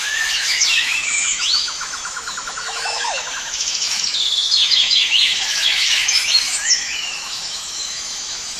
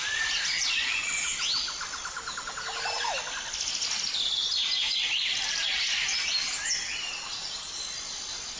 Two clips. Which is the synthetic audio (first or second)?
first